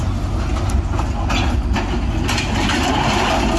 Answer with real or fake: real